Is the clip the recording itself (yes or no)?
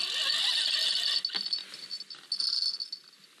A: yes